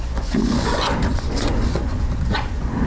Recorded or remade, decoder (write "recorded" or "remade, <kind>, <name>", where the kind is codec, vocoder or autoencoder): remade, vocoder, Vocos